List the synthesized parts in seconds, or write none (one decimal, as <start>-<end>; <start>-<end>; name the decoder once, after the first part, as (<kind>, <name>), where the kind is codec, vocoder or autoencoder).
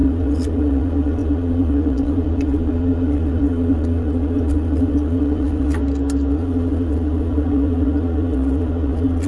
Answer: 0.0-5.8 (vocoder, Vocos); 6.3-9.3